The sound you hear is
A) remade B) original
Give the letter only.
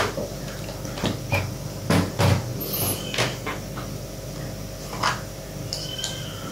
B